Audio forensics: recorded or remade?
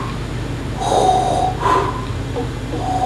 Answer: recorded